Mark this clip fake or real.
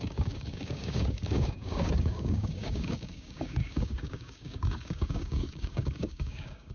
fake